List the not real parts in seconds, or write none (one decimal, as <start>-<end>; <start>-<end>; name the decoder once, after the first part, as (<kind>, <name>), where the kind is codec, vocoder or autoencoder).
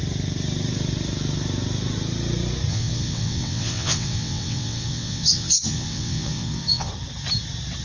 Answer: 2.7-6.9 (vocoder, WaveNeXt)